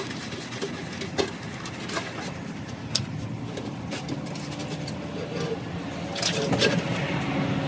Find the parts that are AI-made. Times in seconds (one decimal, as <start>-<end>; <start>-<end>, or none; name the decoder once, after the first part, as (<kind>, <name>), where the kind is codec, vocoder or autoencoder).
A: none